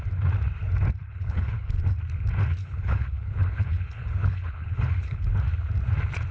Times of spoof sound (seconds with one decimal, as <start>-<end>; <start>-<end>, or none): 1.0-1.8; 2.6-5.3